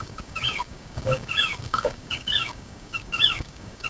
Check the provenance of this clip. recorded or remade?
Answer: remade